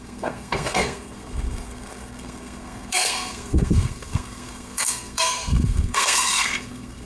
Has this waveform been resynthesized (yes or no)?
yes